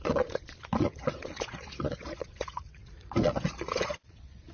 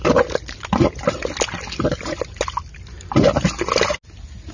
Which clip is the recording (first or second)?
second